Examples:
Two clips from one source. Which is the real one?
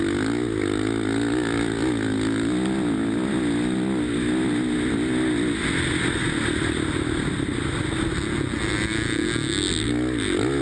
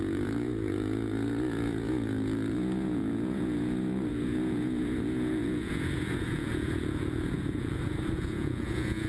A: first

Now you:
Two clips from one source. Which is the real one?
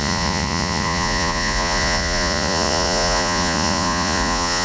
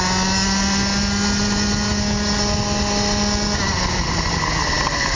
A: second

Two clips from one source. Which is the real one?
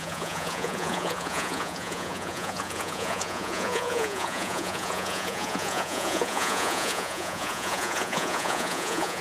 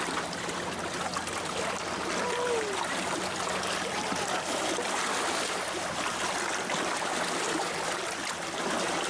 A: second